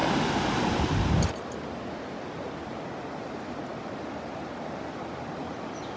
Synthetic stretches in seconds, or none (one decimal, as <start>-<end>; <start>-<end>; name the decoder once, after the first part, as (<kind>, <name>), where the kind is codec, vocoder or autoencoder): none